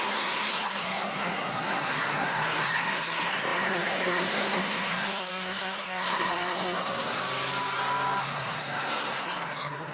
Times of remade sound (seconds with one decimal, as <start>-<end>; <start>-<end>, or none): 0.0-7.2; 8.2-9.9